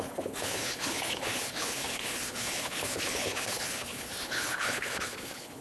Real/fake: fake